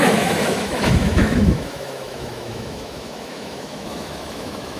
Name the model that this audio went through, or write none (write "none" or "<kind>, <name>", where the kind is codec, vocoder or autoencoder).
autoencoder, DAC-VAE